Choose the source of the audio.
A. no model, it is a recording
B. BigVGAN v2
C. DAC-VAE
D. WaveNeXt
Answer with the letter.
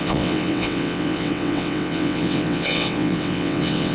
D